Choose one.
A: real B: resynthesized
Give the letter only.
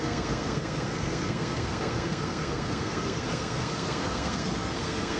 B